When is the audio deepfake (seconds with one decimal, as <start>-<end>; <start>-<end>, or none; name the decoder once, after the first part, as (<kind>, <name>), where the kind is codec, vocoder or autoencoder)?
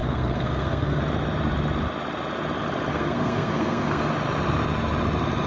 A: 0.0-1.0 (codec, SNAC); 2.9-4.1